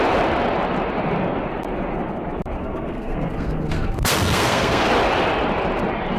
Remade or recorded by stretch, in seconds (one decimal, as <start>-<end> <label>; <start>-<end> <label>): 0.0-2.6 recorded; 2.6-4.9 remade; 4.9-6.2 recorded